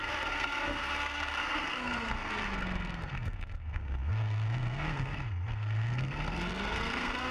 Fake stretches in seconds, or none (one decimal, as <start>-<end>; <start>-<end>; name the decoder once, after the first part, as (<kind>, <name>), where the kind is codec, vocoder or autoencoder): 0.0-7.3 (codec, SNAC)